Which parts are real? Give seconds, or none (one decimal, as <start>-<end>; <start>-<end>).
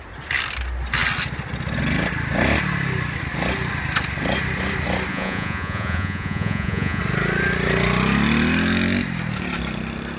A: 0.0-5.1; 7.0-10.2